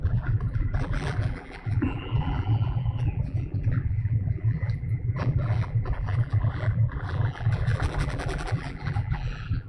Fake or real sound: fake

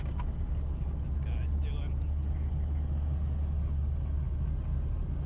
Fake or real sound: real